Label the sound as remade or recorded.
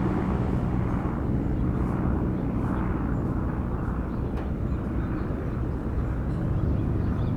recorded